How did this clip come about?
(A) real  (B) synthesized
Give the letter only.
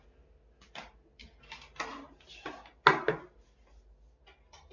A